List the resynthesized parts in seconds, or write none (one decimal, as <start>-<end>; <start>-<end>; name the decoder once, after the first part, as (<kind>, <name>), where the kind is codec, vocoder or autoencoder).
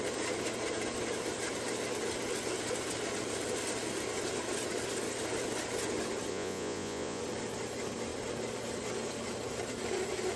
6.3-7.2 (vocoder, Vocos)